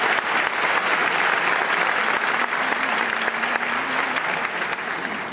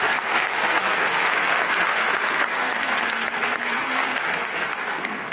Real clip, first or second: first